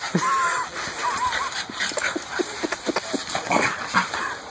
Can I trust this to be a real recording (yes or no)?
no